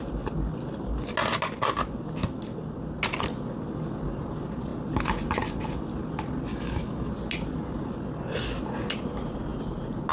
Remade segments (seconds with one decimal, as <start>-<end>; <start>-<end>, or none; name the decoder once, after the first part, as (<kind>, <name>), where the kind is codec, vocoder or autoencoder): 6.5-7.1 (codec, DAC)